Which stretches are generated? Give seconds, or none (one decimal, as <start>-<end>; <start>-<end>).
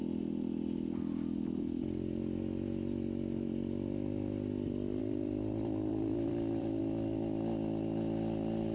5.0-6.8